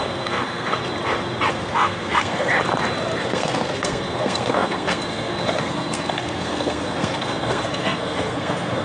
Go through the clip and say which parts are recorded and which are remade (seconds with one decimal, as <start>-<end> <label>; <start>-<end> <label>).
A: 0.0-0.8 remade; 0.8-1.5 recorded; 1.5-2.5 remade; 2.5-3.2 recorded; 3.2-8.8 remade